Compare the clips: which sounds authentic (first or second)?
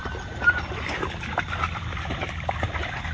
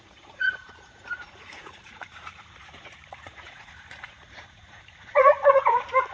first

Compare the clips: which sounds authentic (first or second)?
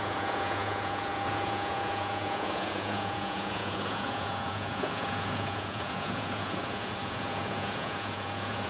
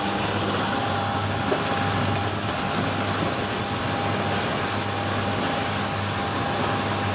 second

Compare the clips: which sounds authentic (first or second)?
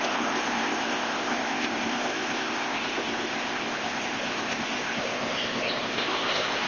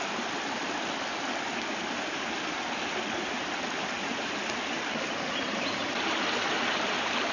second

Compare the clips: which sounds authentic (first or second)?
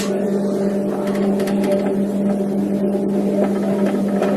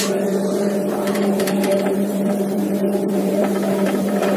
first